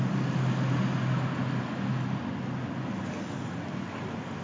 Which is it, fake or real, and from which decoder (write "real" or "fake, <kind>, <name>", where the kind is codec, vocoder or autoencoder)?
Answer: real